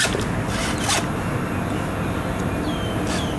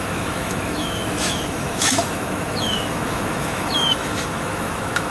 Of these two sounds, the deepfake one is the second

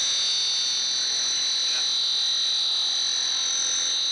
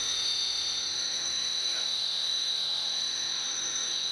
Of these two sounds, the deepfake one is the second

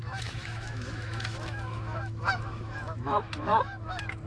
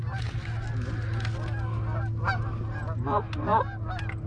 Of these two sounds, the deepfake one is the first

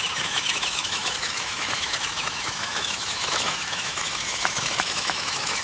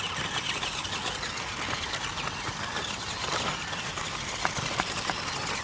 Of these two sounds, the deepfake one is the first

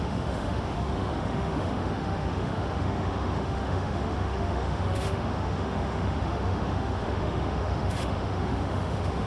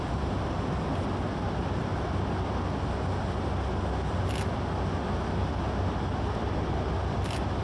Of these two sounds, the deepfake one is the first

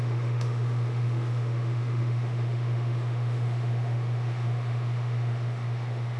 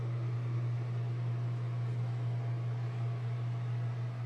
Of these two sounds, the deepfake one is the first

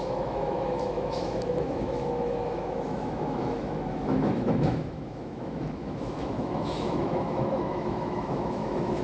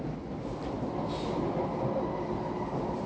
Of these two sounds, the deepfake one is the first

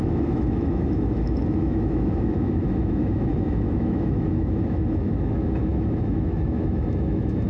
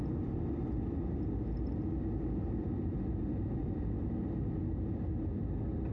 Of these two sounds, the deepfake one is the first